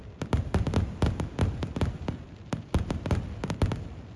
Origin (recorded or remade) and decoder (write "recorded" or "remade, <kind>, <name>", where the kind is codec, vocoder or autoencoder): remade, vocoder, BigVGAN v2